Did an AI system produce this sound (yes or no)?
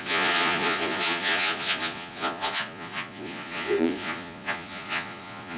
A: yes